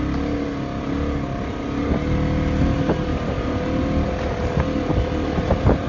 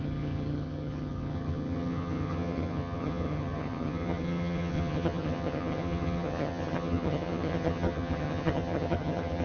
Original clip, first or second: first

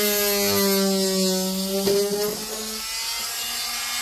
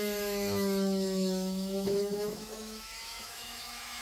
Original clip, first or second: first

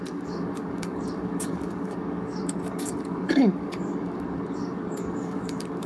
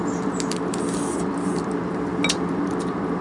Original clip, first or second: second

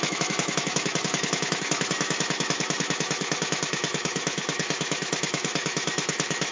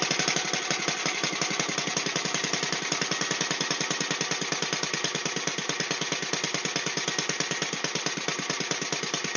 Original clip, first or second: second